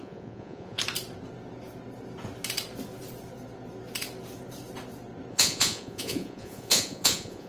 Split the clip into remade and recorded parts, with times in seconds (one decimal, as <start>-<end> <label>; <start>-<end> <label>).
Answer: 0.0-0.8 remade; 0.8-5.3 recorded; 5.3-7.5 remade